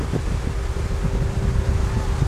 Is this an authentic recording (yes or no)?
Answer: yes